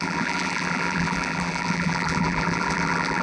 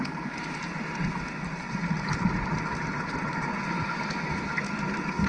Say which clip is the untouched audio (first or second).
second